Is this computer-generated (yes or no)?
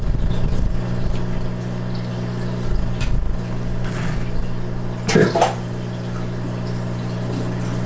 no